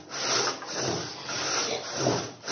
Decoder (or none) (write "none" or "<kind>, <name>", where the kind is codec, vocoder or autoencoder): none